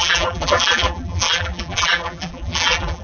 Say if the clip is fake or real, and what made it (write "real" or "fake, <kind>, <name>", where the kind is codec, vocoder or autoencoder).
fake, vocoder, BigVGAN v2